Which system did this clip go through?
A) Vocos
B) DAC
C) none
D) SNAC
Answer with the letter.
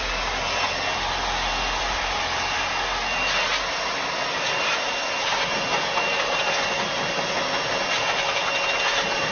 C